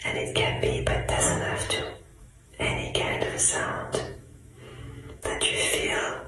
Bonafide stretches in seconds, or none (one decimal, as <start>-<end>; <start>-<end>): none